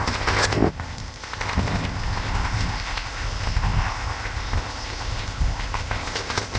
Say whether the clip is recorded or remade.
remade